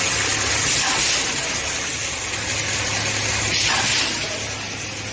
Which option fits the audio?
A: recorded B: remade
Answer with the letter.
A